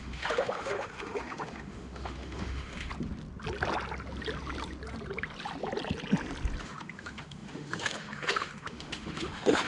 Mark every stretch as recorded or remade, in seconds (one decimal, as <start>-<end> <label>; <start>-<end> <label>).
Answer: 0.0-2.9 remade; 2.9-6.6 recorded; 6.6-9.7 remade